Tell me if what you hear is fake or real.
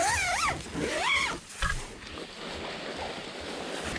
real